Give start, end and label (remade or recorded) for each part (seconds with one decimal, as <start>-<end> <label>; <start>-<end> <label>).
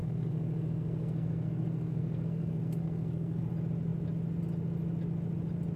0.0-3.5 remade; 3.5-5.8 recorded